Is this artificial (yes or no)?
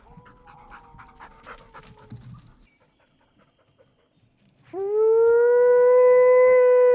no